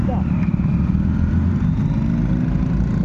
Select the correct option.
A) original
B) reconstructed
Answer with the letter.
A